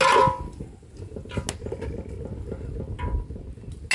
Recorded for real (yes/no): yes